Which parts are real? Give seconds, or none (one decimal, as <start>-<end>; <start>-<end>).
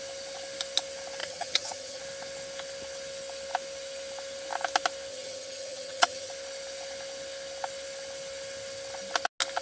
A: 0.0-1.2; 2.0-5.1; 6.3-9.6